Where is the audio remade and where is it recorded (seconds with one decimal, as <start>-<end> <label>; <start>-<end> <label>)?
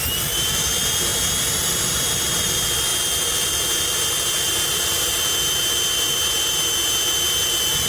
0.0-7.9 recorded